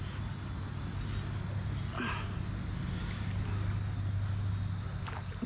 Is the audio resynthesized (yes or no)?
no